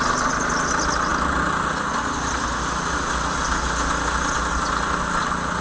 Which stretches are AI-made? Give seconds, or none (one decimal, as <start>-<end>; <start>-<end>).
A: none